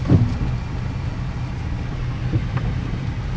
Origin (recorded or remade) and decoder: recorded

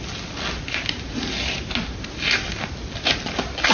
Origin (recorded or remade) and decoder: recorded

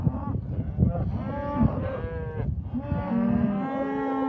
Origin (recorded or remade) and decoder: recorded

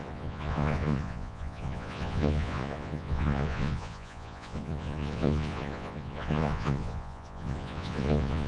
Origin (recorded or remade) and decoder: remade, vocoder, Vocos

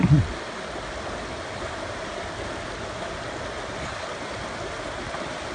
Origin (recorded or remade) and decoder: recorded